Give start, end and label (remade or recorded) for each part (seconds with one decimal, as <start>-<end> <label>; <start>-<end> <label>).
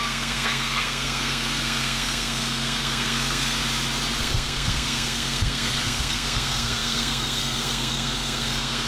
0.0-3.6 remade; 3.6-4.2 recorded; 4.2-8.9 remade